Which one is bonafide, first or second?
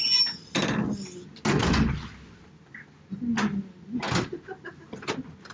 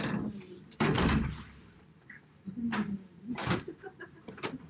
first